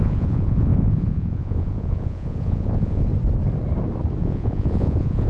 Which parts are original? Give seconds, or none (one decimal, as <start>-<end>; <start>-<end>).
3.1-4.2